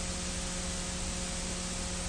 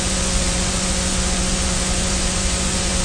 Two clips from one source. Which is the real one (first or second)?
first